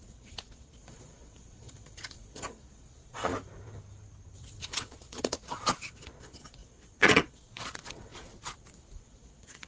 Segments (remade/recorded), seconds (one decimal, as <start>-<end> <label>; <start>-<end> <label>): 0.0-3.3 remade; 3.3-4.5 recorded; 4.5-8.1 remade; 8.1-9.0 recorded; 9.0-9.7 remade